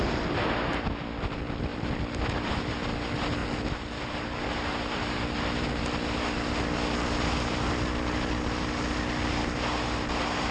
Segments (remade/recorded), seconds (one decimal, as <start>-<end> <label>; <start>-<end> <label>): 0.0-10.5 recorded